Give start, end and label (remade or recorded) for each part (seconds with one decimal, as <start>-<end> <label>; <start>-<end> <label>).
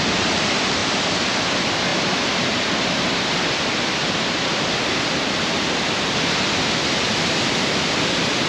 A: 0.0-8.5 remade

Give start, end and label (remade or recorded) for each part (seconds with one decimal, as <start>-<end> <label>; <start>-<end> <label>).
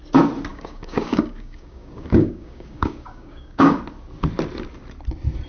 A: 0.0-0.5 recorded; 0.5-3.8 remade; 3.8-5.5 recorded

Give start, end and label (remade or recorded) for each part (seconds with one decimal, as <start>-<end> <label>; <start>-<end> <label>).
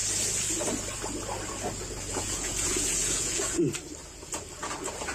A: 0.0-2.1 recorded; 2.1-3.6 remade; 3.6-5.1 recorded